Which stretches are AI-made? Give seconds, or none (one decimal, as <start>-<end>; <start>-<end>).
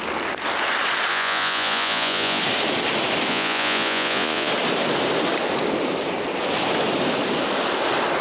1.1-2.4; 3.3-4.5